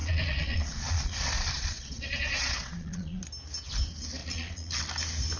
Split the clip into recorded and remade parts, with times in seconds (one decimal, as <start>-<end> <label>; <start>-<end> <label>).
0.0-3.2 remade; 3.2-4.2 recorded; 4.2-4.8 remade; 4.8-5.4 recorded